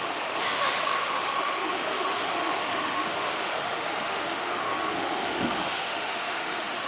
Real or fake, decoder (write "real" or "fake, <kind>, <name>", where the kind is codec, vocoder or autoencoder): fake, autoencoder, DAC-VAE